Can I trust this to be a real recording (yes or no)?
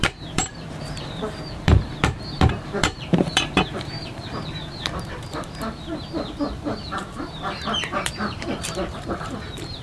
no